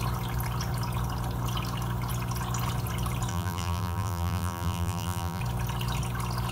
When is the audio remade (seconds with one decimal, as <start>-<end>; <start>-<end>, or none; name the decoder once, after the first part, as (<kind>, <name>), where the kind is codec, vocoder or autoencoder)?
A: 3.3-5.4 (vocoder, BigVGAN v2)